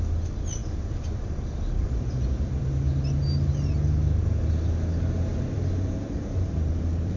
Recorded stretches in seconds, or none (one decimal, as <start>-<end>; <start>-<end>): 0.0-0.6; 2.6-5.3